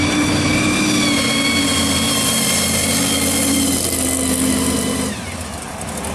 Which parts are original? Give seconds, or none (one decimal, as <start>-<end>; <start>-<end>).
0.0-6.1